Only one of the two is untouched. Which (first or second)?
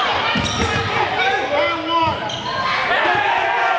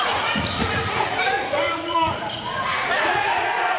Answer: first